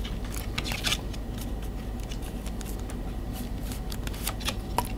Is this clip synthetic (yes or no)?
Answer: no